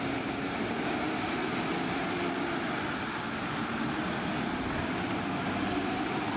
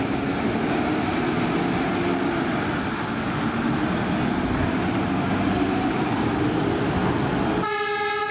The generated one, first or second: first